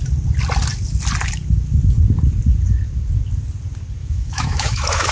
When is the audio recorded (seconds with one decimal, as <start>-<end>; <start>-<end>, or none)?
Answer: 0.0-4.0